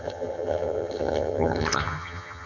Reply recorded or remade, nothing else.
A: remade